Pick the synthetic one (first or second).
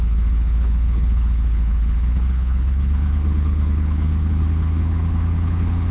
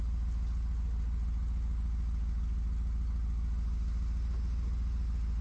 first